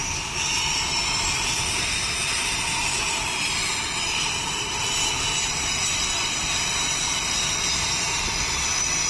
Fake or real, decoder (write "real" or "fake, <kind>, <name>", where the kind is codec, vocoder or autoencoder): real